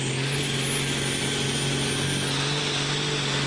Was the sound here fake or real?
real